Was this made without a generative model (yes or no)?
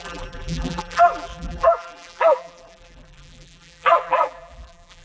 no